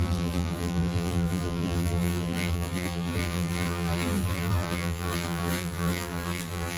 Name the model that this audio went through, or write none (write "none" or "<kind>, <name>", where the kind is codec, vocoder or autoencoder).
vocoder, BigVGAN v2